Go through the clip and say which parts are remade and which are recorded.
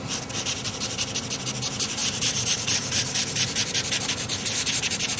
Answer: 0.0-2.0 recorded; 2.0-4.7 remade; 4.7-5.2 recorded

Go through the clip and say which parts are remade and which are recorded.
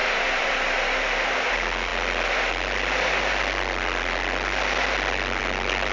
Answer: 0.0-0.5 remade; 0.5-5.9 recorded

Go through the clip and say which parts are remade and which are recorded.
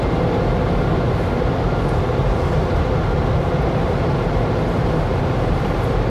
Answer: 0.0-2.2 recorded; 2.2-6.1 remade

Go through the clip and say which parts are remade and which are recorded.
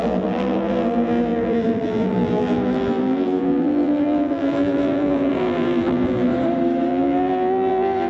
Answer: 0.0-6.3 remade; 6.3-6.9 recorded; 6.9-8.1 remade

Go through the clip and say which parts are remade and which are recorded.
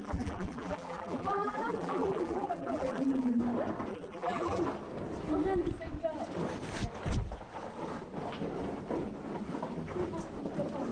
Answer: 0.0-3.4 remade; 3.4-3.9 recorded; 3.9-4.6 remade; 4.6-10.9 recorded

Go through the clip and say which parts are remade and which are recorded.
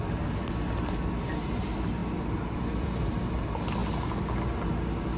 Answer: 0.0-2.0 recorded; 2.0-2.8 remade; 2.8-5.2 recorded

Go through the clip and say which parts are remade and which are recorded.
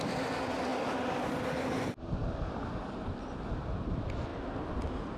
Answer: 0.0-5.2 recorded